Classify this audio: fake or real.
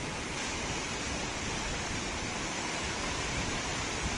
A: fake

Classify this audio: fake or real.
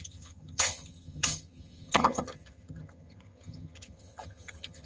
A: fake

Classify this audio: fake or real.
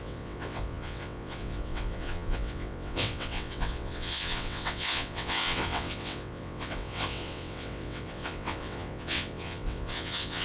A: fake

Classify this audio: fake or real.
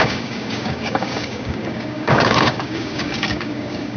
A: fake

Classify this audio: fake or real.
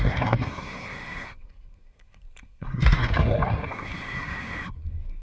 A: fake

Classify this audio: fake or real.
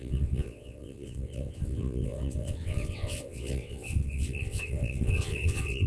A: fake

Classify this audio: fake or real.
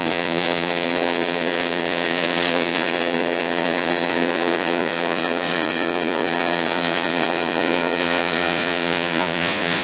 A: fake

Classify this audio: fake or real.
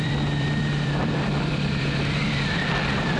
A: fake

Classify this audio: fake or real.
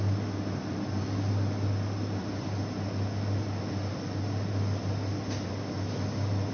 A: real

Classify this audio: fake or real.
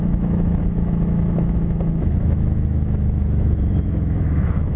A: fake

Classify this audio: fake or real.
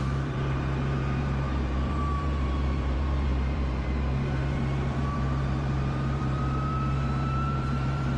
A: fake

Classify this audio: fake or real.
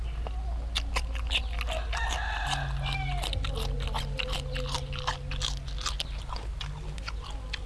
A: real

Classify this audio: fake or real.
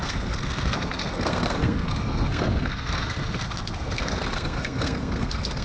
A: fake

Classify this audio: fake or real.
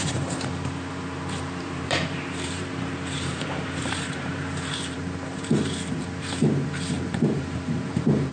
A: fake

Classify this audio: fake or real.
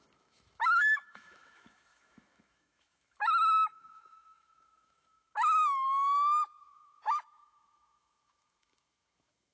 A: fake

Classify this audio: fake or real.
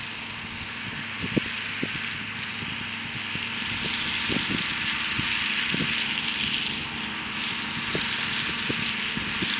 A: real